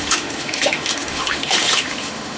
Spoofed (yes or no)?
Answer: yes